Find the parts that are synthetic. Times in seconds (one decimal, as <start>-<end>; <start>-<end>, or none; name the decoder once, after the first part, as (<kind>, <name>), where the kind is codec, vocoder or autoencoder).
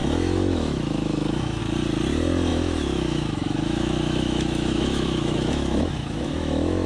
0.0-1.6 (autoencoder, DAC-VAE); 2.5-6.9